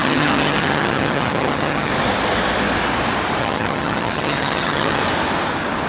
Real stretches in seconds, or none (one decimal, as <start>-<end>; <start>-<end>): 1.9-3.4; 5.0-5.9